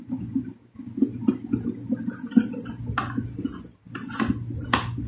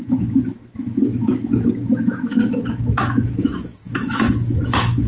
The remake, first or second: second